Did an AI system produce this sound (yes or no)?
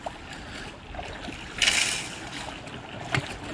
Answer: no